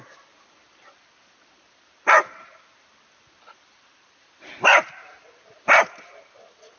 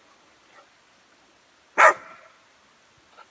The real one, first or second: second